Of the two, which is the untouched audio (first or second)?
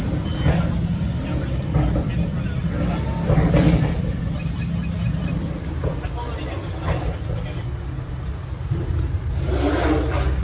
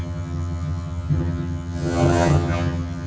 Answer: first